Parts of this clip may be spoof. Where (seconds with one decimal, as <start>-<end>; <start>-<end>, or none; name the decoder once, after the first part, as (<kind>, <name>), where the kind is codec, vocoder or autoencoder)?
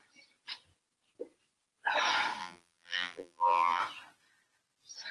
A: 2.4-3.8 (vocoder, BigVGAN v2)